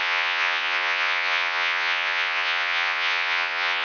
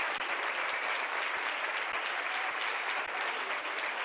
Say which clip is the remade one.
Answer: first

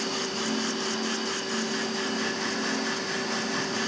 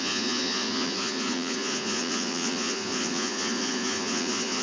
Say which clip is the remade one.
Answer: second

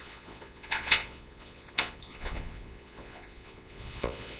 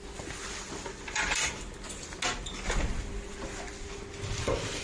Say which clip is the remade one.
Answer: first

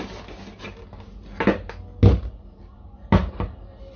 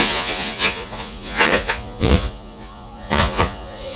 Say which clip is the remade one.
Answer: second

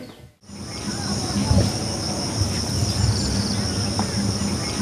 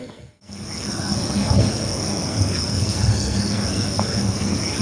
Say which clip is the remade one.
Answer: second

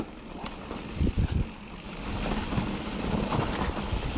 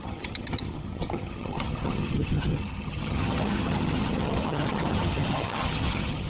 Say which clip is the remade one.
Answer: second